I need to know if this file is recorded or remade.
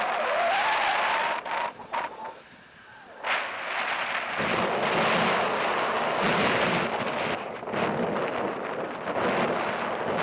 recorded